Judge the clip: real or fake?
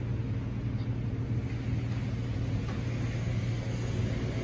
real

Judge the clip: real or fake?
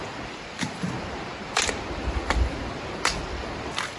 real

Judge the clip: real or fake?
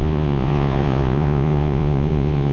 fake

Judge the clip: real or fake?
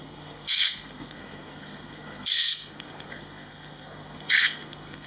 fake